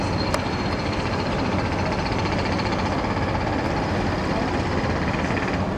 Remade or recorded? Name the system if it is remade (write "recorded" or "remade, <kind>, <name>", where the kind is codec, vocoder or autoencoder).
recorded